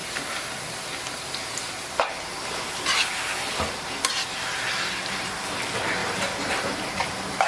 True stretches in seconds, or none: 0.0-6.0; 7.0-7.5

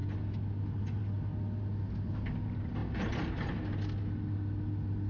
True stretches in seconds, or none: 0.0-5.1

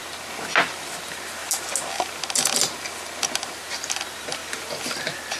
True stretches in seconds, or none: 0.0-5.4